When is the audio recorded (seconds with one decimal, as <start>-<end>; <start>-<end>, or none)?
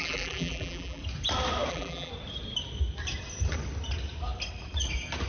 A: 1.0-1.7; 2.1-5.3